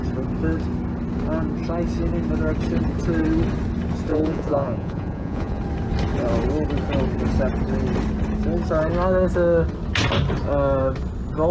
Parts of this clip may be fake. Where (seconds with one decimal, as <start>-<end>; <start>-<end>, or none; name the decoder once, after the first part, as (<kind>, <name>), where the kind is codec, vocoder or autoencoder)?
4.1-5.6 (vocoder, Vocos)